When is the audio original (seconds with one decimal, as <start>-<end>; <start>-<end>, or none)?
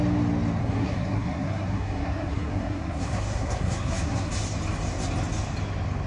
0.0-0.6; 4.3-6.1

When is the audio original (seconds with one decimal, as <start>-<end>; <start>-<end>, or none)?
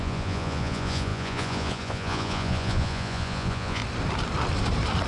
3.8-5.1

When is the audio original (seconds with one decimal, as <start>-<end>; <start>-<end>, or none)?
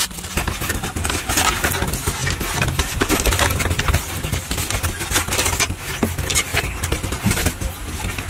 0.0-6.5; 7.8-8.3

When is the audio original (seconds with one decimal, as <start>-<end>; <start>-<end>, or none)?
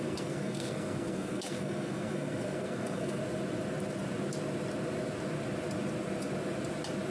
3.2-7.1